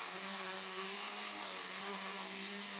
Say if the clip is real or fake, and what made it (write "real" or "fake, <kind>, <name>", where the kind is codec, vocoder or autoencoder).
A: fake, codec, SNAC